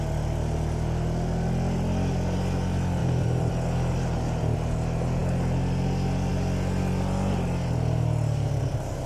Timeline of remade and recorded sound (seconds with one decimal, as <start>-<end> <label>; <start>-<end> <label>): 0.0-3.0 recorded; 3.0-3.5 remade; 3.5-9.1 recorded